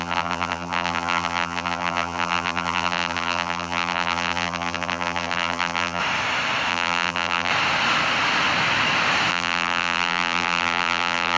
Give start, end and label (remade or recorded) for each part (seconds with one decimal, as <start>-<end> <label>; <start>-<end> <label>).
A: 0.0-6.0 remade; 6.0-6.7 recorded; 6.7-7.5 remade; 7.5-9.3 recorded; 9.3-11.4 remade